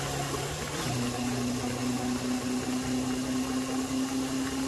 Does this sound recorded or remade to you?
recorded